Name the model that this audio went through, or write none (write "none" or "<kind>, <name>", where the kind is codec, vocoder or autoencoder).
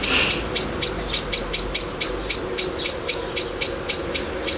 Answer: none